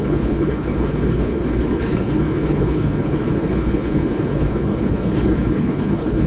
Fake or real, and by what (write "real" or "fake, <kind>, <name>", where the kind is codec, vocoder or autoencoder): fake, codec, HILCodec